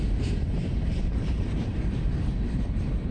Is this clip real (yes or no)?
no